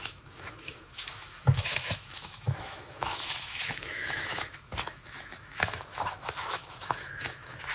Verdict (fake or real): fake